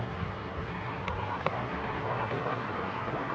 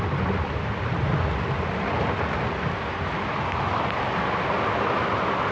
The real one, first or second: second